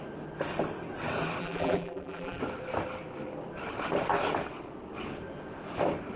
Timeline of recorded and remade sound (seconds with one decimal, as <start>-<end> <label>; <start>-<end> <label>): 0.0-1.4 recorded; 1.4-2.4 remade; 2.4-6.2 recorded